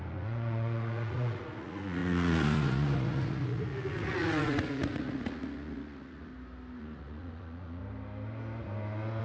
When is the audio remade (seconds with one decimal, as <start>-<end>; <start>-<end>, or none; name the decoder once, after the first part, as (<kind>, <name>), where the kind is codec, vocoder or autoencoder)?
0.0-6.3 (vocoder, Vocos); 6.8-7.8